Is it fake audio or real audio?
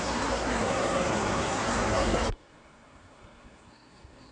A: fake